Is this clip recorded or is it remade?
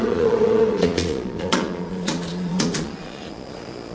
remade